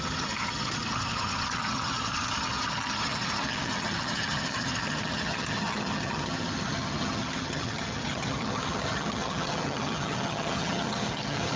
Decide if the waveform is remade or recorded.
remade